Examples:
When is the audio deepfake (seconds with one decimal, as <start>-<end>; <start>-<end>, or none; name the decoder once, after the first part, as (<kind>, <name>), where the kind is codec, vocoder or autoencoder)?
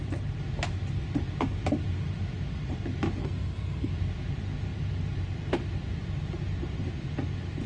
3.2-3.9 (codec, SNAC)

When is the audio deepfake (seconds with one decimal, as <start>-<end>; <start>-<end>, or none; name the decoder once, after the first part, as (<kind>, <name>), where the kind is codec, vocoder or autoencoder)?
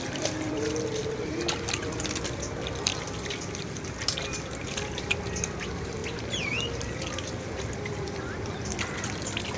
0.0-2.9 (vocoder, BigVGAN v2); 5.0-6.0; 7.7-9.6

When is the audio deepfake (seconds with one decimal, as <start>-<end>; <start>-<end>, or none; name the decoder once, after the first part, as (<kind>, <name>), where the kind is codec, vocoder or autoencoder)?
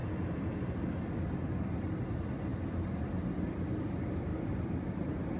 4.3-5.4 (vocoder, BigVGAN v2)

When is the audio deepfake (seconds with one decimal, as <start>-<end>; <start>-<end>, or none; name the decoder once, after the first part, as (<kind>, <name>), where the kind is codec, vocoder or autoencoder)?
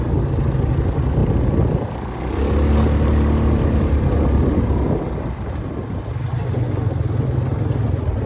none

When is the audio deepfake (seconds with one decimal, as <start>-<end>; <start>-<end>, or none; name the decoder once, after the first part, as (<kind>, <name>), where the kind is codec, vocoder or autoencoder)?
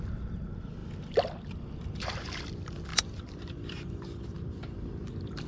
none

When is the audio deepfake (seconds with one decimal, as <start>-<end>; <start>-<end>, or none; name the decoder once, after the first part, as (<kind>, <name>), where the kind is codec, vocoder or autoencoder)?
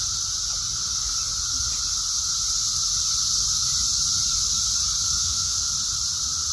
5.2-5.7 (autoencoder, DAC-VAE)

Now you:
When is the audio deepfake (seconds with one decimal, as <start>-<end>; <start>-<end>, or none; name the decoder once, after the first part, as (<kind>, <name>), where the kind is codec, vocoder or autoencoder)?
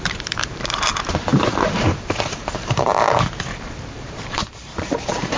0.0-5.4 (vocoder, BigVGAN v2)